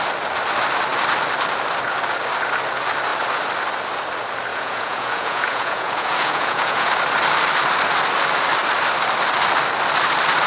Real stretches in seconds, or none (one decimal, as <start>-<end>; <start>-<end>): 0.0-4.5; 6.9-10.5